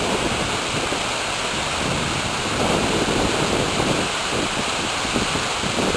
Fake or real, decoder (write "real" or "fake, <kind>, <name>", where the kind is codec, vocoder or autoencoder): real